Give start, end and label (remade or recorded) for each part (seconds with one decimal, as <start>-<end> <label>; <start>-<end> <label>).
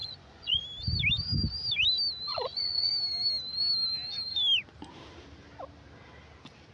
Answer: 0.0-0.6 remade; 0.6-2.3 recorded; 2.3-2.9 remade; 2.9-6.7 recorded